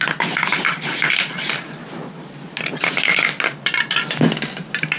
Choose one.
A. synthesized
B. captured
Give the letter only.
B